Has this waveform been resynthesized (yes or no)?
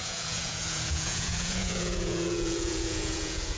yes